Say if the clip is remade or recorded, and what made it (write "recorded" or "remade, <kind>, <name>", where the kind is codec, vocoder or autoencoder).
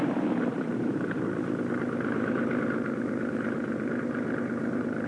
remade, vocoder, BigVGAN v2